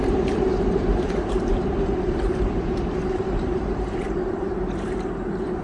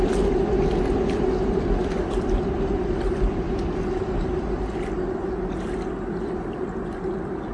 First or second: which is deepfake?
first